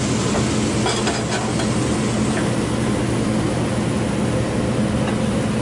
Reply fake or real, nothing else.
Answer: real